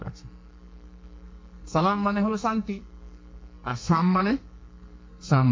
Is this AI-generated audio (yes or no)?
yes